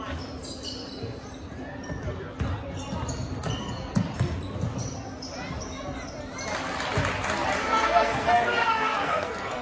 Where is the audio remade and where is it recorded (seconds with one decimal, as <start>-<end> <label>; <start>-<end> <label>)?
0.0-7.6 recorded; 7.6-9.6 remade